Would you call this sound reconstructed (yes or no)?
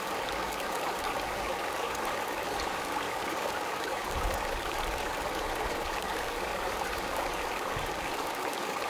yes